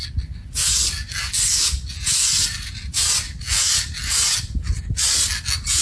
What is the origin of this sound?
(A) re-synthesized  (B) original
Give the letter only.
B